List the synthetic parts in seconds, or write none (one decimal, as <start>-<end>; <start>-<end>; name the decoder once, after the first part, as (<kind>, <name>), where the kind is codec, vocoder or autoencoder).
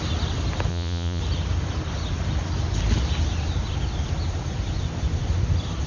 0.7-1.2 (vocoder, Vocos)